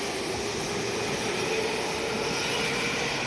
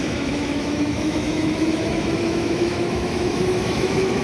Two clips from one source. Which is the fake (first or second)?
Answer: second